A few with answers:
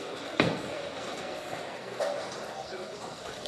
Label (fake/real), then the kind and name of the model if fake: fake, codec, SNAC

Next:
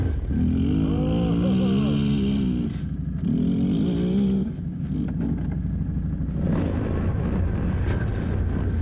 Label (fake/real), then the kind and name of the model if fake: real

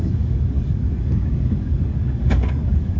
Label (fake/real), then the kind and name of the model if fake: fake, codec, DAC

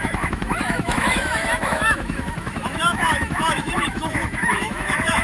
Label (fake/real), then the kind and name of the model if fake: fake, autoencoder, DAC-VAE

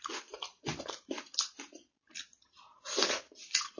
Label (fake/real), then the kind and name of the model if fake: real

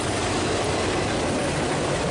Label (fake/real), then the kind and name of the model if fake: real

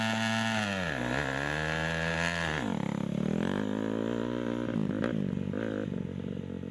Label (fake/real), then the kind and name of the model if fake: real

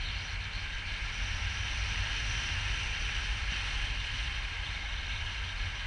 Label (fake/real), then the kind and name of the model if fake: real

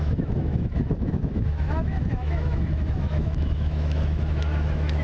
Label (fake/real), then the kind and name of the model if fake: fake, autoencoder, DAC-VAE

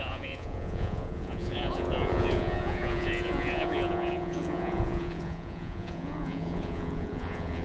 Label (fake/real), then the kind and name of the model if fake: fake, vocoder, Vocos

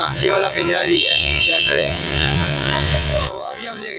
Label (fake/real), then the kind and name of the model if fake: fake, vocoder, WaveNeXt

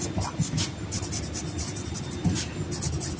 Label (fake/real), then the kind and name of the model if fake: real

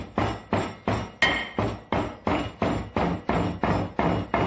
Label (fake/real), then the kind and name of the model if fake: real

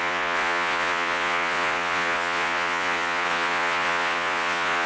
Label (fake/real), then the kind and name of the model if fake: fake, vocoder, Vocos